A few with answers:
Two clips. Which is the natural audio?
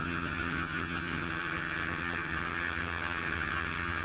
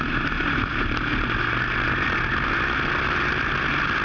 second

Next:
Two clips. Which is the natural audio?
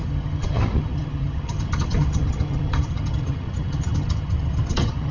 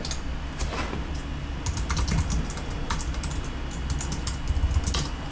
second